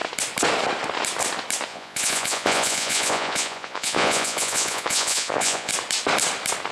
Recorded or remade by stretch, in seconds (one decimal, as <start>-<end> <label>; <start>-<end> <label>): 0.0-1.7 recorded; 1.7-5.7 remade; 5.7-6.7 recorded